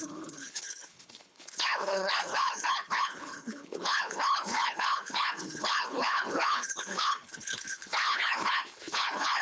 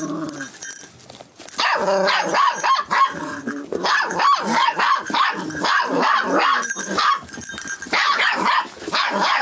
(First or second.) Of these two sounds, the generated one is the first